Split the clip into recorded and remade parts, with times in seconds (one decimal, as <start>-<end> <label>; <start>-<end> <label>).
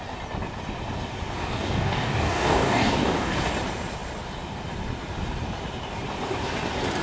0.0-1.4 recorded; 1.4-3.4 remade; 3.4-7.0 recorded